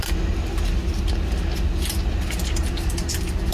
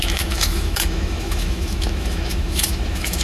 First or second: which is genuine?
first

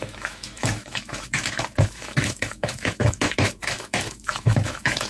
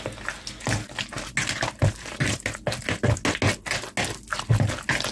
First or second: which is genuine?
second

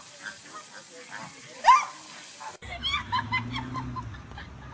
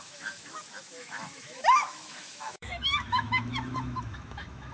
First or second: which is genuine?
first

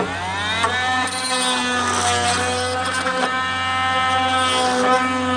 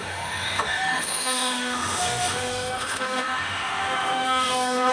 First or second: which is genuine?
first